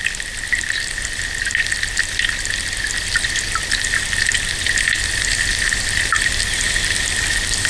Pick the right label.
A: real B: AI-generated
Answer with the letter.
A